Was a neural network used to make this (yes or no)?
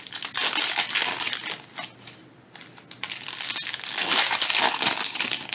no